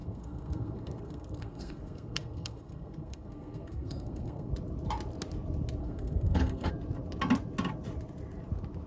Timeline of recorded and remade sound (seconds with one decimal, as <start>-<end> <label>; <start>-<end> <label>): 0.0-4.5 remade; 4.5-5.8 recorded; 5.8-6.7 remade; 6.7-8.9 recorded